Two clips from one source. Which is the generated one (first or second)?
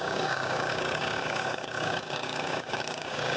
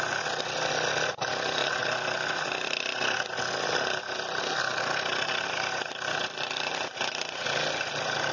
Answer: first